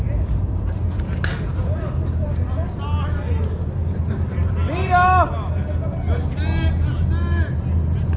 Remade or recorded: recorded